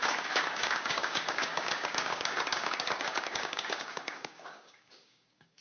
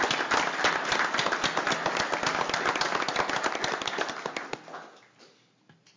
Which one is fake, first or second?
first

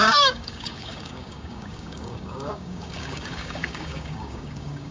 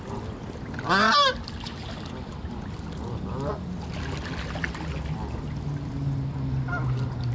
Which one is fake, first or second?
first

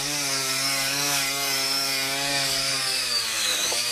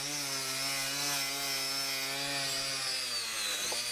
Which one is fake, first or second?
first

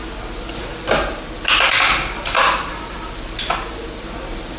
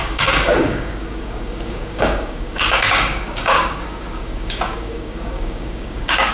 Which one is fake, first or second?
second